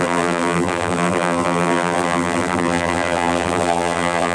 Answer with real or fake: fake